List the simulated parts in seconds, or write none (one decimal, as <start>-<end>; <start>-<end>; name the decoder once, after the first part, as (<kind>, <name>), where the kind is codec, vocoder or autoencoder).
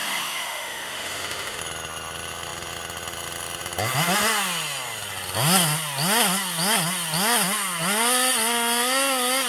0.0-1.6 (autoencoder, DAC-VAE)